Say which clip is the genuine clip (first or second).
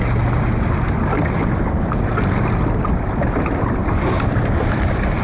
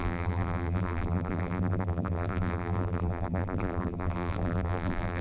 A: first